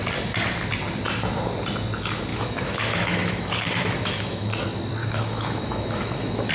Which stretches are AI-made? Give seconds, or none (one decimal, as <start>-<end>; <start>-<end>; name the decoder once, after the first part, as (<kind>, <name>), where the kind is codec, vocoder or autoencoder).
2.3-4.5 (autoencoder, DAC-VAE); 5.0-6.5